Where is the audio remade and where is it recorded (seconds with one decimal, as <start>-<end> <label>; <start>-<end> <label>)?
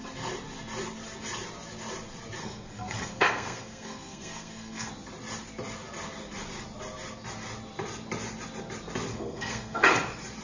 0.0-2.4 recorded; 2.4-4.9 remade; 4.9-9.1 recorded; 9.1-9.8 remade; 9.8-10.4 recorded